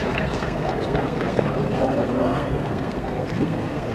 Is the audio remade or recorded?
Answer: remade